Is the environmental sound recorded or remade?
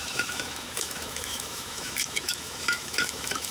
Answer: remade